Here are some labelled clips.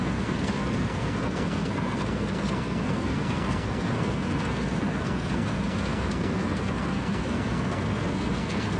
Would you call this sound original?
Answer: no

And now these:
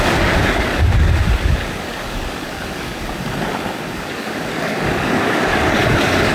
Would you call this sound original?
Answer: no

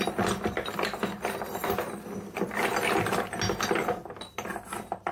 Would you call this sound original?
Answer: yes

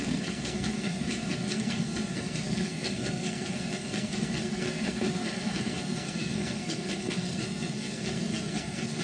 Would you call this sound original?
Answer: no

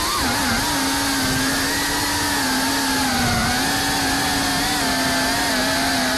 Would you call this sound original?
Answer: yes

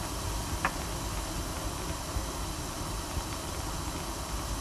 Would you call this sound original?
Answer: yes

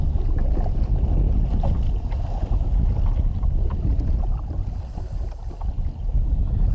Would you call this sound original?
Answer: yes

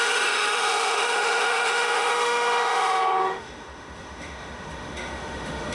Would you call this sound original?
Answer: no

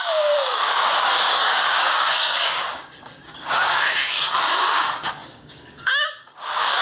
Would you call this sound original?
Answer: no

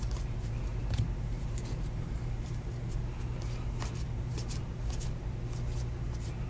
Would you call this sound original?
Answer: no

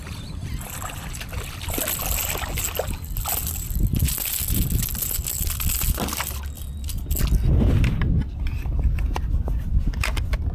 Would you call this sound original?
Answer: yes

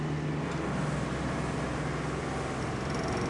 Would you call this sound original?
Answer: yes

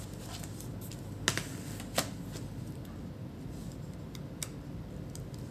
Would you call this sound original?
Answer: yes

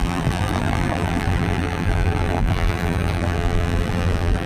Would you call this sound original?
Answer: no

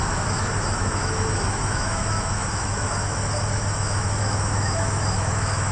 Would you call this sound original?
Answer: no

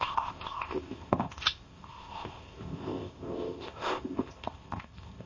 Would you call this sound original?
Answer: no